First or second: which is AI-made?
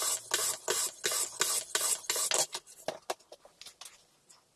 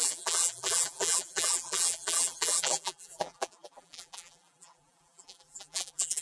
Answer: second